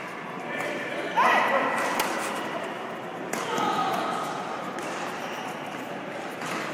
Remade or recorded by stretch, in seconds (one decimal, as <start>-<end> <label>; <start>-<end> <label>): 0.0-3.8 recorded; 3.8-6.7 remade